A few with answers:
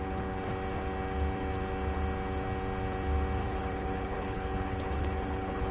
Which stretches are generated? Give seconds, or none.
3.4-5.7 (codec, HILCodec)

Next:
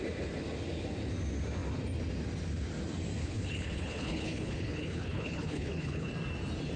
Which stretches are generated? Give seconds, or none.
3.2-6.1 (codec, HILCodec)

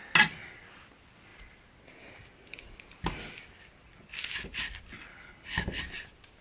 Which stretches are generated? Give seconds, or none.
5.1-5.8 (codec, HILCodec)

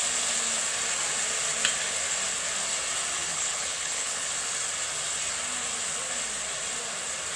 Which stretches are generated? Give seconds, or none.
3.3-4.3 (codec, HILCodec)

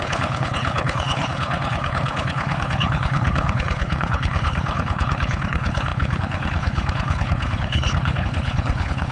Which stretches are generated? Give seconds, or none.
0.0-9.1 (codec, HILCodec)

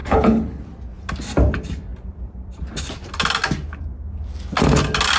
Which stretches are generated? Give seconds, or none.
0.0-0.6 (codec, HILCodec)

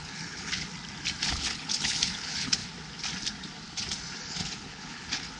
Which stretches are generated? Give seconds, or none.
0.0-0.7 (codec, HILCodec); 1.3-2.6; 4.2-5.4

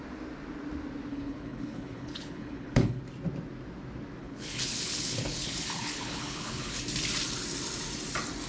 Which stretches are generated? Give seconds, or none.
1.1-3.0 (codec, HILCodec); 4.2-6.8